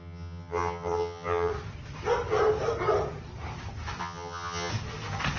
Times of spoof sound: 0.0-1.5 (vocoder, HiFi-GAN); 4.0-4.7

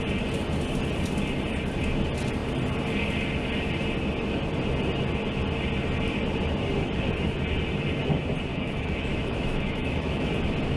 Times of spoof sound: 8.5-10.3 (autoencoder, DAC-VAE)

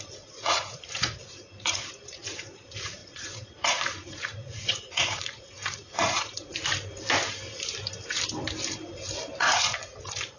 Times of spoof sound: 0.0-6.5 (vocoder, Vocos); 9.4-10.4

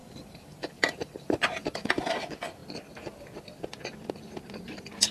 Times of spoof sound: 0.0-2.1 (vocoder, BigVGAN v2)

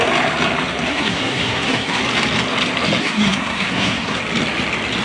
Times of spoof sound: 0.9-2.0 (codec, SNAC); 3.0-4.2

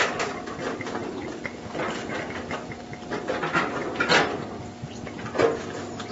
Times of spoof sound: none

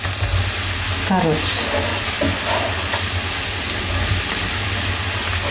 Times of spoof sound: none